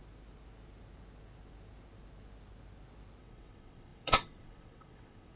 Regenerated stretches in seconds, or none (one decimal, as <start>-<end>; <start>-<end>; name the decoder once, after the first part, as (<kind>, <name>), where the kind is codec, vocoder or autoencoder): 3.2-5.4 (vocoder, WaveNeXt)